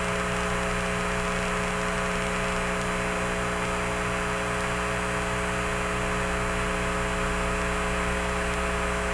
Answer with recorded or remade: recorded